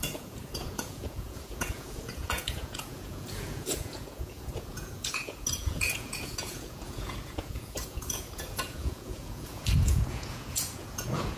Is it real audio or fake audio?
fake